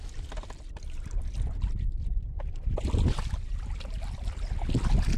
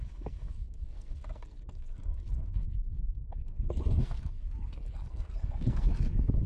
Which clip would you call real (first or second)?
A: first